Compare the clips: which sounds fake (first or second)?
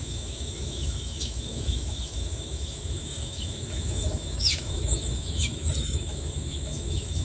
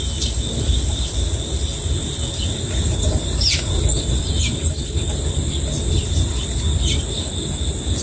first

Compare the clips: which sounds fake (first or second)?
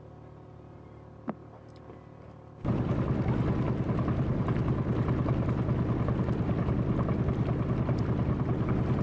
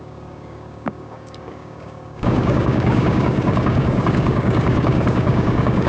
second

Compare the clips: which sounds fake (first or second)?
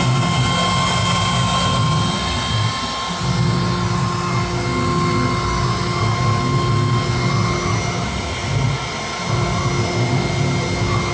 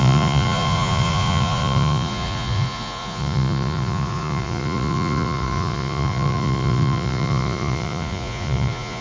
second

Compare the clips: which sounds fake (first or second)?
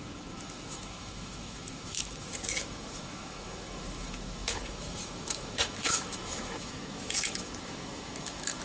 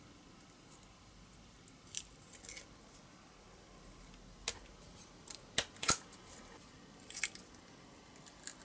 first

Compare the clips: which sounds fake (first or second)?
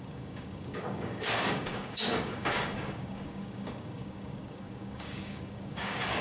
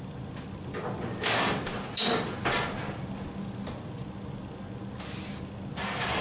first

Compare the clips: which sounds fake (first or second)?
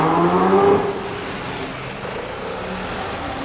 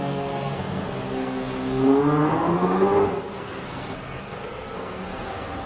second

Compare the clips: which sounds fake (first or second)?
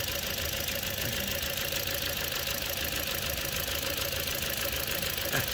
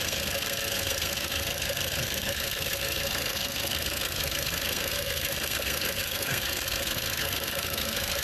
second